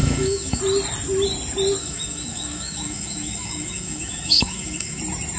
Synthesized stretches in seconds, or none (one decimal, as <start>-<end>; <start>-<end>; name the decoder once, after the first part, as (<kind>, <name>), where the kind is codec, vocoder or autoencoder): 0.0-0.6 (autoencoder, DAC-VAE); 1.8-5.0